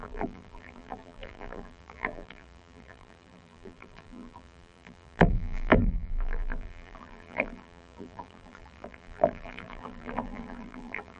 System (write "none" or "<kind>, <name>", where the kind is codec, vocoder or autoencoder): vocoder, BigVGAN v2